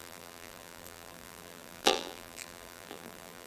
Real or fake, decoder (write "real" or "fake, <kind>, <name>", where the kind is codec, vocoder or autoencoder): fake, vocoder, BigVGAN v2